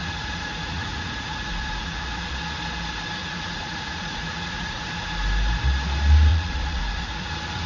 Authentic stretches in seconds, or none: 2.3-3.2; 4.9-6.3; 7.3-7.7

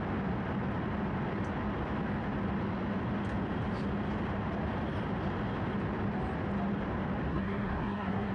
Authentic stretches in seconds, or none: 0.0-7.3

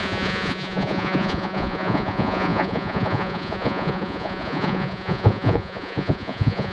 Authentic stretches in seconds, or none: none

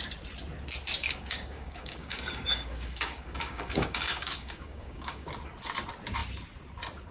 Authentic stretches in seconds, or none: 0.0-1.0; 5.3-7.1

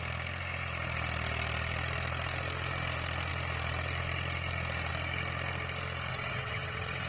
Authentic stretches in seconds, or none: 0.0-6.1

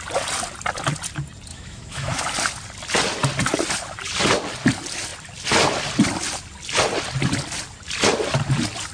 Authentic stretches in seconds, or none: 0.0-1.5; 2.2-8.9